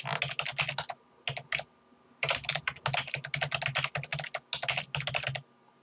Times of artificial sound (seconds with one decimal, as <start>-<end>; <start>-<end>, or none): none